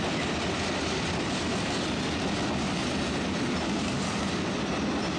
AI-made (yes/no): no